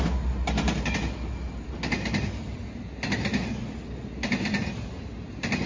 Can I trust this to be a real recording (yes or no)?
yes